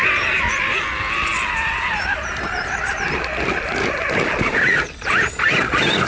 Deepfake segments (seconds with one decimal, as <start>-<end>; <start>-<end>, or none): none

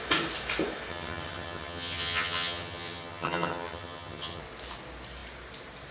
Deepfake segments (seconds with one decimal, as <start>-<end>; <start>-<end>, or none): 0.9-4.4

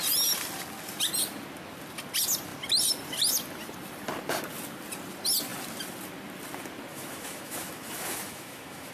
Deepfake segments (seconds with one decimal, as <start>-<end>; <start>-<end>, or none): 6.9-8.9